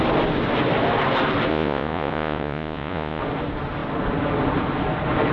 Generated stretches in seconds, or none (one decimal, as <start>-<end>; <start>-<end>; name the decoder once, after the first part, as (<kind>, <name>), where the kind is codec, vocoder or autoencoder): 1.5-3.2 (vocoder, Vocos)